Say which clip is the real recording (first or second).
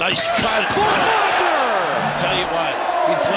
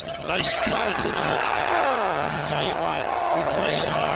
first